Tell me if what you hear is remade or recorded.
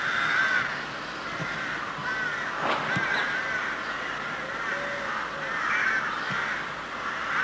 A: recorded